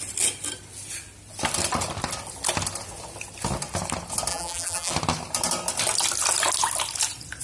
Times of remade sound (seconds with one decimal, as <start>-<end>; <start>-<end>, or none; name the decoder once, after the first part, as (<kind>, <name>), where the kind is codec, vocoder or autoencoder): 4.3-4.9 (vocoder, BigVGAN v2)